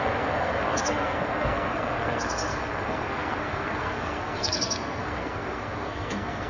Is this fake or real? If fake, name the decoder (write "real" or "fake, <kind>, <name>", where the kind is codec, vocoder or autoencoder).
fake, codec, SNAC